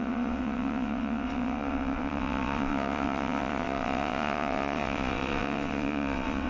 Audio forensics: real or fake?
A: fake